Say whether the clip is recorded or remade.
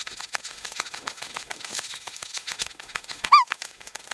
remade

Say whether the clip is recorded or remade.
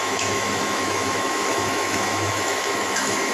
remade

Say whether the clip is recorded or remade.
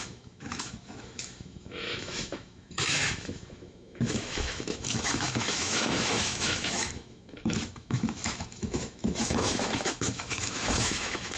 remade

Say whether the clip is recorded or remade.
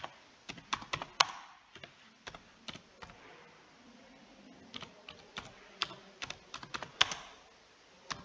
recorded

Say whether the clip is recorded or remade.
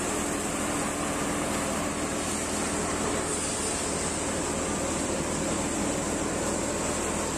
recorded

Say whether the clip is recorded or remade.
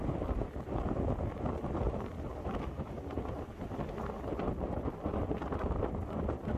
recorded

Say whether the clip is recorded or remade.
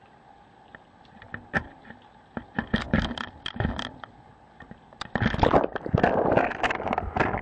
recorded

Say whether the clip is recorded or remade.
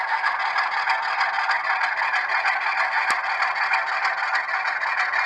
recorded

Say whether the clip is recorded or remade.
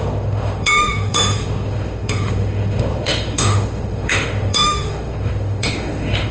remade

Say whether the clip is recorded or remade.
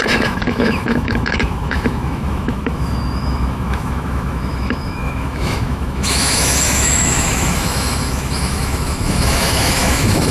remade